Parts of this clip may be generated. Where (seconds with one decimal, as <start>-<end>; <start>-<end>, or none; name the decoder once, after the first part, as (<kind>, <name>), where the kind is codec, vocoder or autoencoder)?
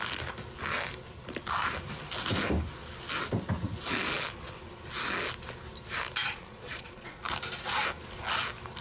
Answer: 6.2-7.2 (vocoder, Vocos)